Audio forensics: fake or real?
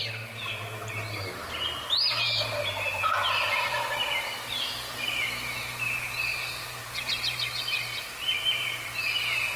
fake